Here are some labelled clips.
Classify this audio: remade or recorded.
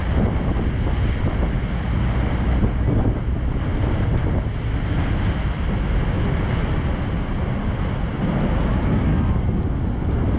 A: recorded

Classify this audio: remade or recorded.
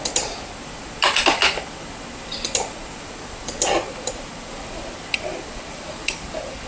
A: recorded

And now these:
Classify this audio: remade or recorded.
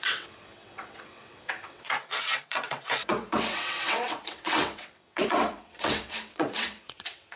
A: remade